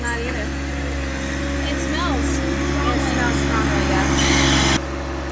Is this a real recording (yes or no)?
yes